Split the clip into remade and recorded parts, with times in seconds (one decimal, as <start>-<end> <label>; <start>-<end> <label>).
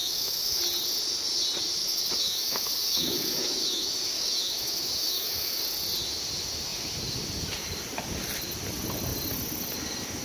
0.0-0.6 remade; 0.6-1.8 recorded; 1.8-5.6 remade; 5.6-10.2 recorded